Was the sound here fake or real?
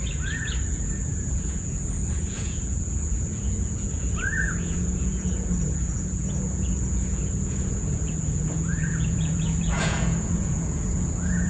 fake